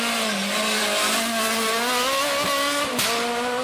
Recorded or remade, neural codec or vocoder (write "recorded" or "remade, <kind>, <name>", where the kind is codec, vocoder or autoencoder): recorded